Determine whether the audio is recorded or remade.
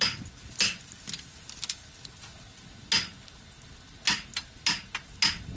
recorded